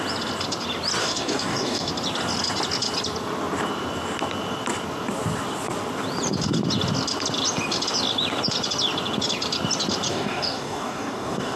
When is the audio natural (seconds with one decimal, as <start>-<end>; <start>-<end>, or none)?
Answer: 0.0-1.0; 1.9-10.1